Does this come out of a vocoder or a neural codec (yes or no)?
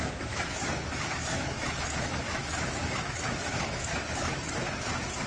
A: yes